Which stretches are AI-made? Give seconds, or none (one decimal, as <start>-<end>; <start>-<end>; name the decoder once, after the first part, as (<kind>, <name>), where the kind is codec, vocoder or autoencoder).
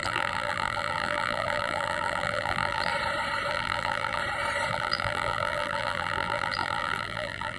0.0-2.9 (vocoder, BigVGAN v2); 3.5-4.2; 4.7-7.6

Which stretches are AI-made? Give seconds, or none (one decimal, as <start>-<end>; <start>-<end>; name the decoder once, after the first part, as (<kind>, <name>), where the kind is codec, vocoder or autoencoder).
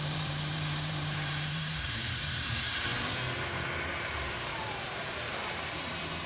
0.0-2.9 (vocoder, BigVGAN v2); 4.1-6.3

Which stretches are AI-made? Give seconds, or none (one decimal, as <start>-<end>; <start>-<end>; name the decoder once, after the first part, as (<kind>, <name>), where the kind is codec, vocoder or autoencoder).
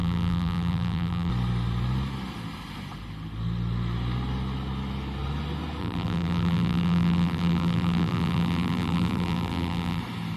0.0-1.3 (vocoder, BigVGAN v2); 5.8-10.0